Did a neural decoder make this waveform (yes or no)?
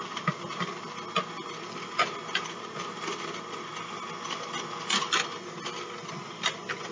no